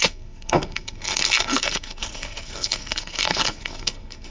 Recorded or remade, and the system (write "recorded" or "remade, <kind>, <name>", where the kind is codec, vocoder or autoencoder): remade, codec, SNAC